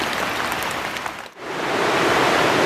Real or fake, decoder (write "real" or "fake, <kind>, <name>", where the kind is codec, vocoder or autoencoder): real